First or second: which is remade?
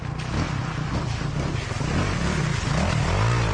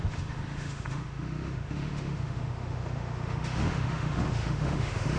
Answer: second